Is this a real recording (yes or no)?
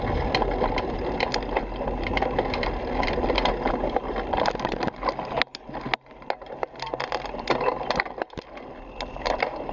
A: yes